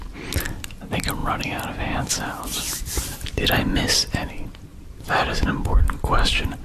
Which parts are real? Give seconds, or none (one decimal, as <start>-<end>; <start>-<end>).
0.0-6.6